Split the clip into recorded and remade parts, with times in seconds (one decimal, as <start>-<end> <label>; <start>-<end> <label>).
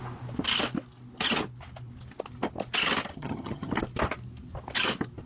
0.0-3.1 recorded; 3.1-3.7 remade; 3.7-5.3 recorded